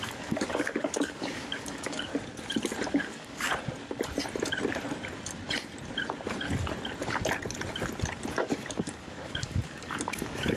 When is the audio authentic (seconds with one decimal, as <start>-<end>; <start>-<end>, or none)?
2.1-2.9; 3.5-8.3